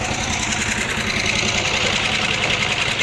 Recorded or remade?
recorded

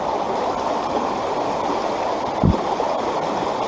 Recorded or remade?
recorded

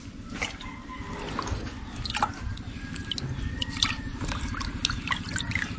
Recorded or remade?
recorded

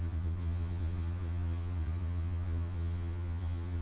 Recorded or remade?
remade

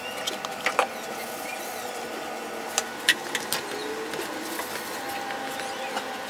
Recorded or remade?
recorded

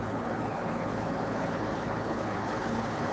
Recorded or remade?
remade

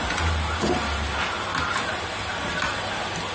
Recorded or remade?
recorded